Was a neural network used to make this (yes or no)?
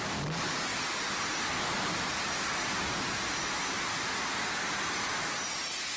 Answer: no